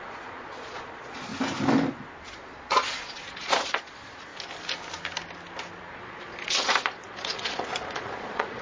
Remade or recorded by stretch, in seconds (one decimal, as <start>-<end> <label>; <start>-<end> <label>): 0.0-1.3 remade; 1.3-2.2 recorded; 2.2-4.3 remade; 4.3-5.8 recorded; 5.8-8.6 remade